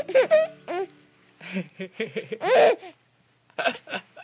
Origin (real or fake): real